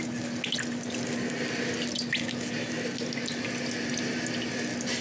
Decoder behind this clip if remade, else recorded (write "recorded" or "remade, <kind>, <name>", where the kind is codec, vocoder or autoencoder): recorded